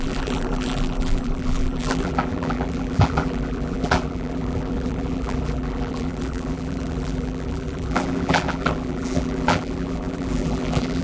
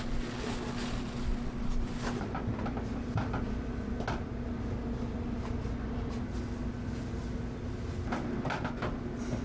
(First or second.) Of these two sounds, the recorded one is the second